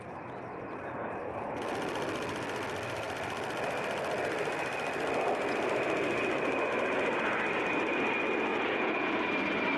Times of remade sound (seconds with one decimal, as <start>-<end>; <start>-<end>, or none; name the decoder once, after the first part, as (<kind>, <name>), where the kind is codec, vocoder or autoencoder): 8.5-9.1 (vocoder, Vocos)